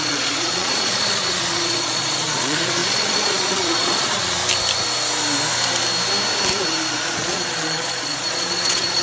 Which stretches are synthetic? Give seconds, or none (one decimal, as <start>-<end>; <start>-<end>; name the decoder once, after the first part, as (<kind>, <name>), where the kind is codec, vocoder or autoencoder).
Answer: 0.0-4.4 (vocoder, Vocos); 6.9-9.0